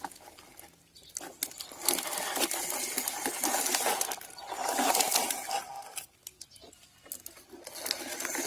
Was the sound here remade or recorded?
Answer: recorded